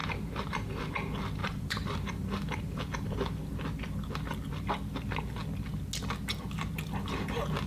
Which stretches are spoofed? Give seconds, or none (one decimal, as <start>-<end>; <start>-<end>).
0.0-0.9; 1.4-2.8